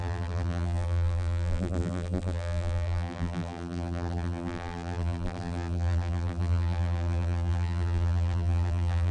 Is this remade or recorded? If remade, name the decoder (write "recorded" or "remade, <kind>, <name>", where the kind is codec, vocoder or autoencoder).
remade, vocoder, BigVGAN v2